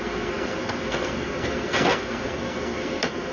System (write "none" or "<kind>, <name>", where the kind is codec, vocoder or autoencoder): codec, SNAC